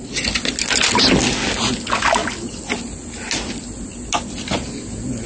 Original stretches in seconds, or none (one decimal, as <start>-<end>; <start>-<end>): 0.0-5.3